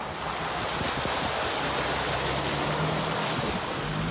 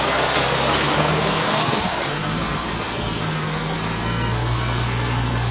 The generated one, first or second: second